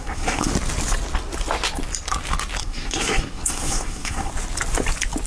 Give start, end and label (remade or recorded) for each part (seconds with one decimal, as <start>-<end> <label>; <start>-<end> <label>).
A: 0.0-0.5 remade; 0.5-2.6 recorded; 2.6-4.3 remade; 4.3-5.3 recorded